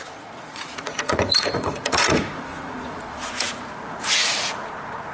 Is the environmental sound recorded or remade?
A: remade